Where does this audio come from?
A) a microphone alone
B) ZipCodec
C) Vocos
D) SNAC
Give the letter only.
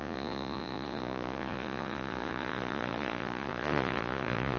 C